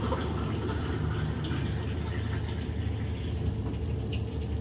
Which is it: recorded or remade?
recorded